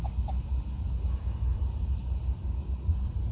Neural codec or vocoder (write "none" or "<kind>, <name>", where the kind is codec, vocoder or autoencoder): none